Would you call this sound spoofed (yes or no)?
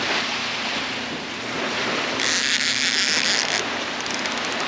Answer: no